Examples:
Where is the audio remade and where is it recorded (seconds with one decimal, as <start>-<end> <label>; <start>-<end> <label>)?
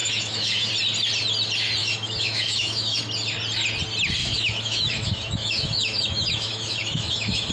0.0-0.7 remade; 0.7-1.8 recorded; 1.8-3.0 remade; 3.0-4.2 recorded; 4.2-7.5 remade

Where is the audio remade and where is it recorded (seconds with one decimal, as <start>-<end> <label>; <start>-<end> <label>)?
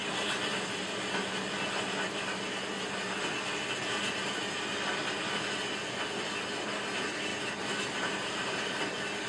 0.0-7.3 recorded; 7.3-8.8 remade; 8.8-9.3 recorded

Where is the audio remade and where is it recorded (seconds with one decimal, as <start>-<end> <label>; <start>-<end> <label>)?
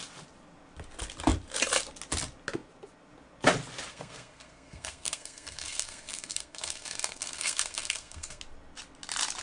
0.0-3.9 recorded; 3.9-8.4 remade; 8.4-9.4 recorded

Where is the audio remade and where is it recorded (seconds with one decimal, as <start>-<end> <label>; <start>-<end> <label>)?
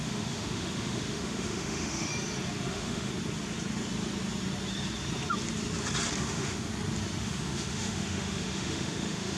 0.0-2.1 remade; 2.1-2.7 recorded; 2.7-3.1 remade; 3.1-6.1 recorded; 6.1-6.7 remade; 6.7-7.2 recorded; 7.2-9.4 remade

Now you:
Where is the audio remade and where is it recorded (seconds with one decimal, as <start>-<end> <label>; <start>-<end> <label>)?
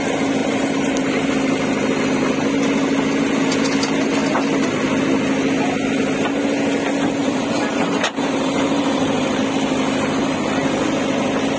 0.0-0.4 recorded; 0.4-1.3 remade; 1.3-7.2 recorded; 7.2-9.3 remade; 9.3-11.6 recorded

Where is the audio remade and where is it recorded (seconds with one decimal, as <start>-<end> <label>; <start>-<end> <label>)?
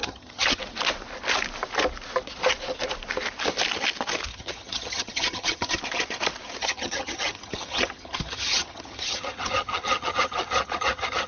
0.0-0.6 remade; 0.6-4.3 recorded; 4.3-5.8 remade; 5.8-6.6 recorded; 6.6-11.3 remade